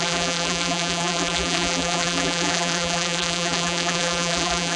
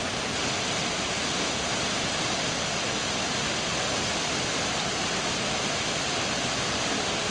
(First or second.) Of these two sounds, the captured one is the second